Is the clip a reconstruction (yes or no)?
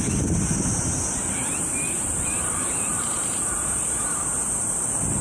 yes